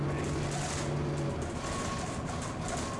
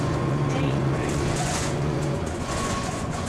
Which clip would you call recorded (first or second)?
first